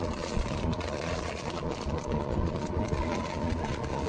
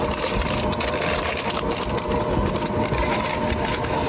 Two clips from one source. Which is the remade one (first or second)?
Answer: first